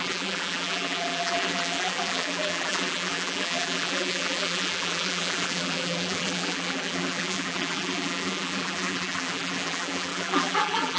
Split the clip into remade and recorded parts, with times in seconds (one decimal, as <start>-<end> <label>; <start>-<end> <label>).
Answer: 0.0-11.0 remade